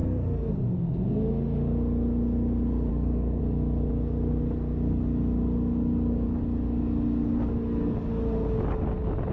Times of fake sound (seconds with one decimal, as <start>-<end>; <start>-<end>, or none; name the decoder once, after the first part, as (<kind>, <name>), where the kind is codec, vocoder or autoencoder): 0.0-0.5 (codec, SNAC); 2.9-3.4